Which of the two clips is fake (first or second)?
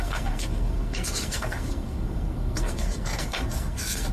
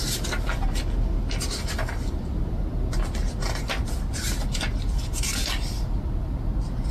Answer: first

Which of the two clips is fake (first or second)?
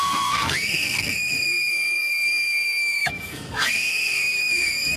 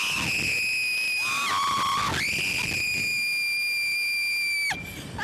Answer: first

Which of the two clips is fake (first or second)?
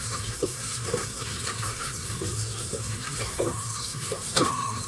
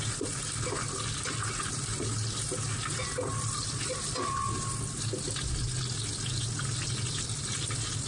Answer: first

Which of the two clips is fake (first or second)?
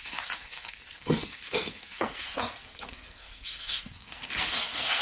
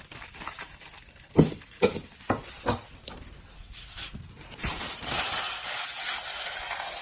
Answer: first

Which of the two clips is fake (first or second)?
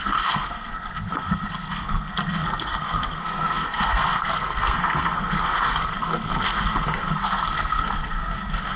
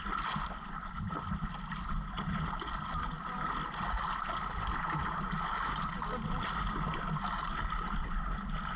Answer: first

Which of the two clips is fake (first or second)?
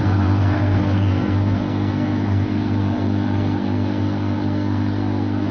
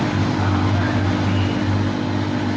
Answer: first